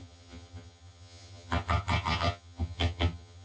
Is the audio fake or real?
fake